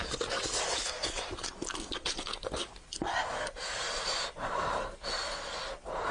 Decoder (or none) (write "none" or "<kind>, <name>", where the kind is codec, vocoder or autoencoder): none